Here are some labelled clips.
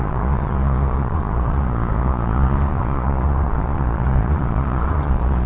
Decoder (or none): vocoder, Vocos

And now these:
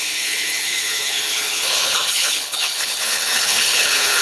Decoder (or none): codec, HILCodec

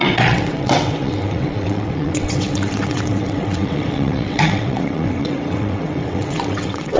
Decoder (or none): vocoder, WaveNeXt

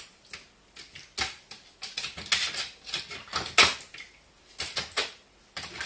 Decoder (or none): none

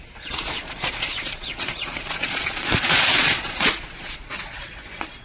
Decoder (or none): vocoder, Vocos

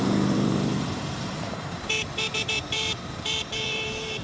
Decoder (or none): vocoder, BigVGAN v2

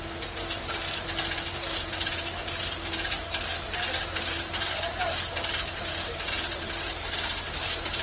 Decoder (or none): vocoder, BigVGAN v2